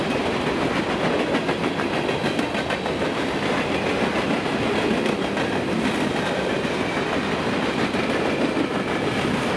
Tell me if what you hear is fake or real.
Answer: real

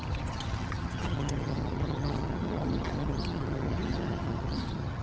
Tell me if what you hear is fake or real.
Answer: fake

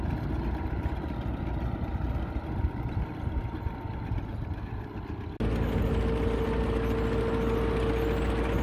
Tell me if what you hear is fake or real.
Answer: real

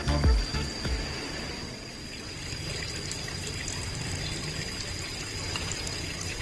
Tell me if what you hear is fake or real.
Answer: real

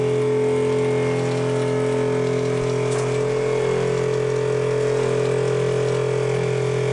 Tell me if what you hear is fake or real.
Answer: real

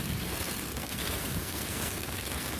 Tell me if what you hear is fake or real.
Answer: fake